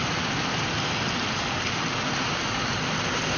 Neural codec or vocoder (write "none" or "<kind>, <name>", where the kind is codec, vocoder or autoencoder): none